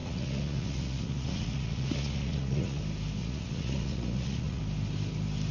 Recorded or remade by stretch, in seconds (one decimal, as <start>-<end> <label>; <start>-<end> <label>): 0.0-2.8 remade; 2.8-3.2 recorded; 3.2-4.6 remade; 4.6-5.5 recorded